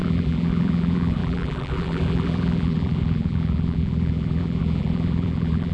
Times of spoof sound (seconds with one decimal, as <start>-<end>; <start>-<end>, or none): 0.0-5.7